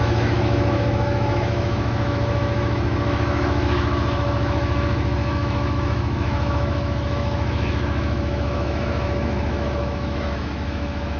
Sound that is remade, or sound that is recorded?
remade